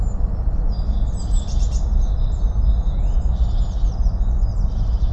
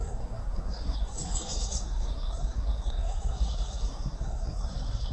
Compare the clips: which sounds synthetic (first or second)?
second